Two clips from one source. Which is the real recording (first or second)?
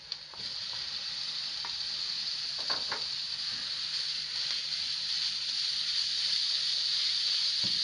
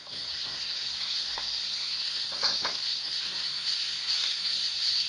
first